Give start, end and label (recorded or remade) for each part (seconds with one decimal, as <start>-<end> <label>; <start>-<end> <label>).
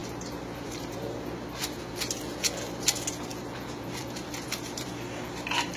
0.0-2.0 remade; 2.0-3.3 recorded; 3.3-5.8 remade